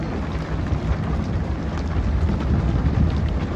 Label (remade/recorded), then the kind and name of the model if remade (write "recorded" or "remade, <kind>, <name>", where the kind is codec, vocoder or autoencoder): remade, vocoder, BigVGAN v2